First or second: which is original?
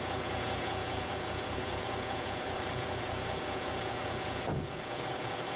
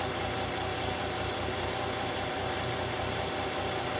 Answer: second